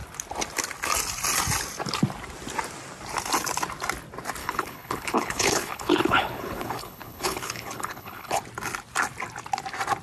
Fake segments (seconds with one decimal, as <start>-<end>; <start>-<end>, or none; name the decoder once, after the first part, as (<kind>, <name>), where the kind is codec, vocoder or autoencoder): 4.4-8.4 (codec, HILCodec)